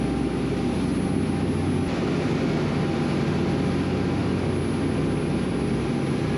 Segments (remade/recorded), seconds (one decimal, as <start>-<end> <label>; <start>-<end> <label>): 0.0-6.4 recorded